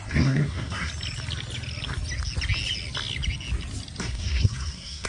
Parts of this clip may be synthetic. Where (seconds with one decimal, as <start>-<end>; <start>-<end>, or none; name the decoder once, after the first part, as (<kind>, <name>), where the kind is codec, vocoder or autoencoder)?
0.0-0.9 (codec, SNAC); 4.0-5.1